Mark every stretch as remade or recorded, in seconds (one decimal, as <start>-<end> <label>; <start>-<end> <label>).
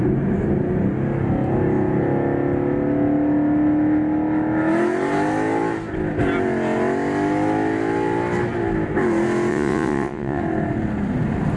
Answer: 0.0-9.5 recorded; 9.5-10.4 remade; 10.4-11.6 recorded